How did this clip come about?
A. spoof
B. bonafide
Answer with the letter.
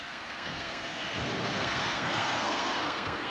A